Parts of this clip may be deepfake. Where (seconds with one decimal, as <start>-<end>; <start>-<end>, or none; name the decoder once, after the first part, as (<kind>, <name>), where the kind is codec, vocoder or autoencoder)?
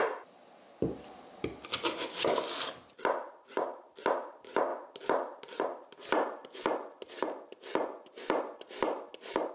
none